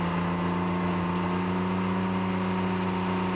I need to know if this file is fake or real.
real